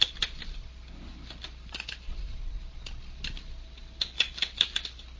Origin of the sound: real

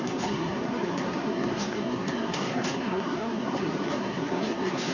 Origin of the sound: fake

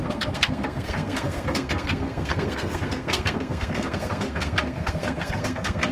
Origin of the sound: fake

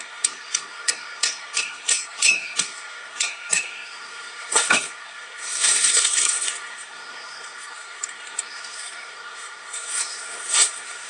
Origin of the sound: fake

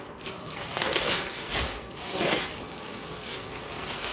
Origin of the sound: fake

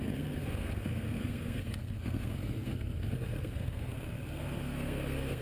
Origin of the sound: fake